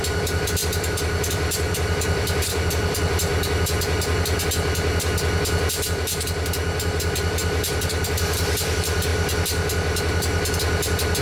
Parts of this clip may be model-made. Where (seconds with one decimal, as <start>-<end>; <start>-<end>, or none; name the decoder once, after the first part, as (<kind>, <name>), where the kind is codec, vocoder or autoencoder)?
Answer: 0.0-3.3 (vocoder, BigVGAN v2); 5.7-9.1